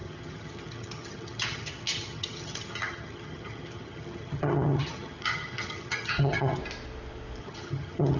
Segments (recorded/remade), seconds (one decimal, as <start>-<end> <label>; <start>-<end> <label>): 0.0-6.6 remade; 6.6-7.4 recorded; 7.4-8.2 remade